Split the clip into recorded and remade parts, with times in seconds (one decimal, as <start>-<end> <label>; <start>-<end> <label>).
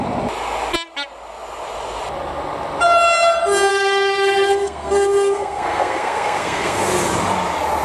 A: 0.0-3.7 recorded; 3.7-6.8 remade; 6.8-7.8 recorded